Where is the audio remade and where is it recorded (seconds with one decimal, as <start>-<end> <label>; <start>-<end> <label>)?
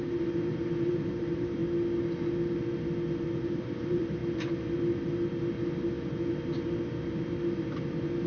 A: 0.0-1.6 remade; 1.6-3.3 recorded; 3.3-4.2 remade; 4.2-8.3 recorded